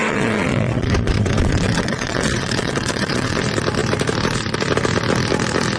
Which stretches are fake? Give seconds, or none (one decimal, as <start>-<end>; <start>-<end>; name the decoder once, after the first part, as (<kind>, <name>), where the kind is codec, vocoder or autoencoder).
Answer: 0.0-3.4 (vocoder, WaveNeXt)